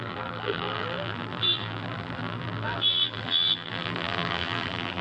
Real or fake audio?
fake